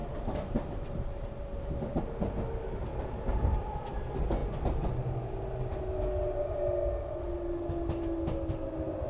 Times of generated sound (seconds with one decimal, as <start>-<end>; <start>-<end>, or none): 0.0-2.0; 2.9-3.9